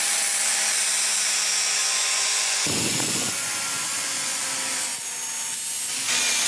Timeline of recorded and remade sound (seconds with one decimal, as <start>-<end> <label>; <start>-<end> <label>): 0.0-1.8 recorded; 1.8-4.4 remade; 4.4-6.5 recorded